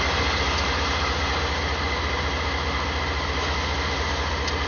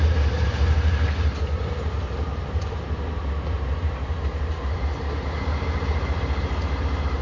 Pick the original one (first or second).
first